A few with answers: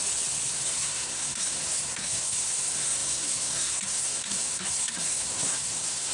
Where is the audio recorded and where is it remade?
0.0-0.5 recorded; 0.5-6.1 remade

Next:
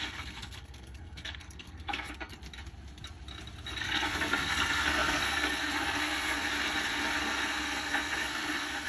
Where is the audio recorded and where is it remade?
0.0-2.3 remade; 2.3-3.8 recorded; 3.8-6.5 remade; 6.5-7.2 recorded; 7.2-8.9 remade

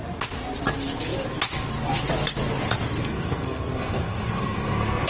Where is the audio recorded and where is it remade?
0.0-3.0 recorded; 3.0-5.1 remade

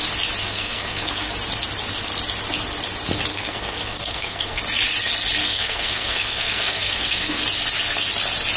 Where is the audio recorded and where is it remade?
0.0-0.4 recorded; 0.4-1.3 remade; 1.3-3.3 recorded; 3.3-4.6 remade; 4.6-5.4 recorded; 5.4-7.4 remade; 7.4-8.6 recorded